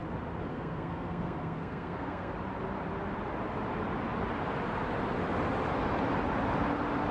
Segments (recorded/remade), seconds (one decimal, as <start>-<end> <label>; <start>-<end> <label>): 0.0-0.5 recorded; 0.5-2.3 remade; 2.3-7.1 recorded